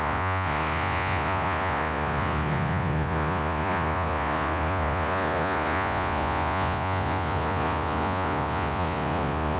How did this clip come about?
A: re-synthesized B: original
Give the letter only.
A